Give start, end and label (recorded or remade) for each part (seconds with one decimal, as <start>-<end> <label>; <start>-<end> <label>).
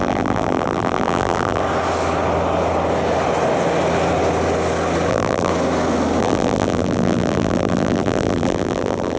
0.0-1.6 remade; 1.6-5.1 recorded; 5.1-5.5 remade; 5.5-6.2 recorded; 6.2-9.2 remade